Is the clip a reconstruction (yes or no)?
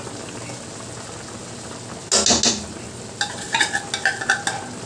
no